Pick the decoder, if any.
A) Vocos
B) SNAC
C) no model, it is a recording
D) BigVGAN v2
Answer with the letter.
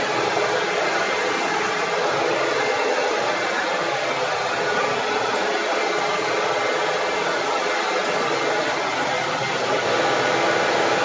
C